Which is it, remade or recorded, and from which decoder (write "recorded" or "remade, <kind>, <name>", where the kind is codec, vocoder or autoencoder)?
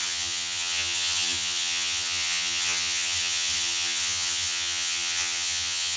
remade, vocoder, HiFi-GAN